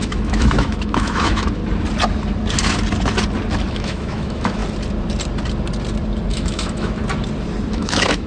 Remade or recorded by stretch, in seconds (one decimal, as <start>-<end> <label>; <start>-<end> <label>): 0.0-1.6 remade; 1.6-3.7 recorded; 3.7-4.6 remade; 4.6-6.3 recorded; 6.3-7.0 remade; 7.0-7.7 recorded; 7.7-8.3 remade